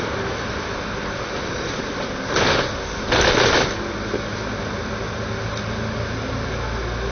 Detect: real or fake real